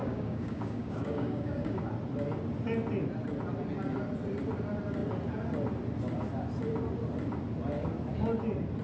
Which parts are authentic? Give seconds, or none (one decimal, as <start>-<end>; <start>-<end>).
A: 1.8-8.8